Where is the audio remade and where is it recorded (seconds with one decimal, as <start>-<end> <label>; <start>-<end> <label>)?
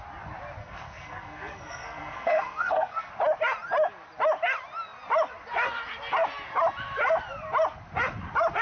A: 0.0-0.6 recorded; 0.6-3.1 remade; 3.1-8.6 recorded